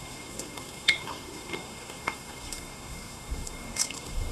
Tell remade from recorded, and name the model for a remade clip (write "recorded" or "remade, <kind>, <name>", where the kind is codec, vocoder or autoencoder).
remade, codec, SNAC